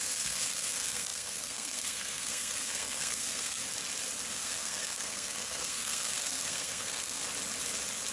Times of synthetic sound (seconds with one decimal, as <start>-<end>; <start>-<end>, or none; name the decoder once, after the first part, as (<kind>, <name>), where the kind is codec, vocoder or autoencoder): 0.0-3.6 (codec, SNAC); 4.3-7.2